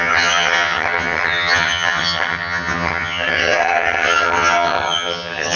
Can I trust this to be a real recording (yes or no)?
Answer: no